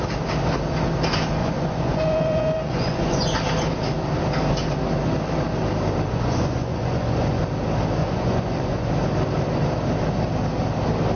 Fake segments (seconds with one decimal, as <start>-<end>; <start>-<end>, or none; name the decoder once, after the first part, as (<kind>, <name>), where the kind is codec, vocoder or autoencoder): 1.4-3.2 (vocoder, Vocos); 6.1-7.4; 8.0-8.9